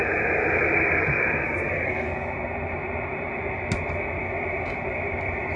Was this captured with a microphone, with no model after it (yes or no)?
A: yes